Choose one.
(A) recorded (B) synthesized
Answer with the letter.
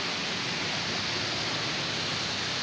A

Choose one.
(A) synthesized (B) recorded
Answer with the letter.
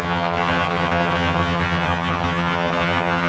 A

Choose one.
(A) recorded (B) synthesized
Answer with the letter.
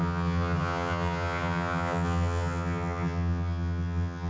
B